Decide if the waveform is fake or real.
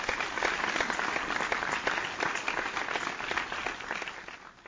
real